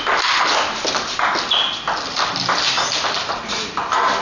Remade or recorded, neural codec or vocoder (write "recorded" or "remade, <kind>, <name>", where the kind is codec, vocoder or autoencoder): recorded